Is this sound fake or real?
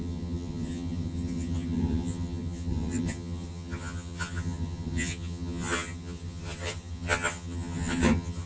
fake